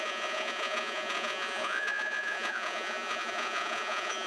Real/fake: fake